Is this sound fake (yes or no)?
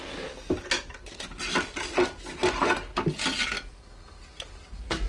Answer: no